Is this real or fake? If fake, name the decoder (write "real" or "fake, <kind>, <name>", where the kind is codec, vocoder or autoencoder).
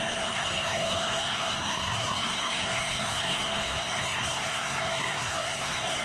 fake, codec, SNAC